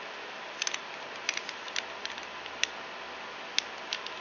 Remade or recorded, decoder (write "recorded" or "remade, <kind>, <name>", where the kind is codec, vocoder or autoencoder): recorded